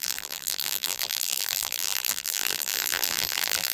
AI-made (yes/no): yes